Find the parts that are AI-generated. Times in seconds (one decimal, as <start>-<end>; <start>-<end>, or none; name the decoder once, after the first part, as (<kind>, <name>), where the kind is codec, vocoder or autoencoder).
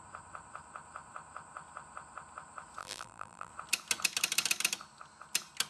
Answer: 2.8-3.5 (vocoder, BigVGAN v2)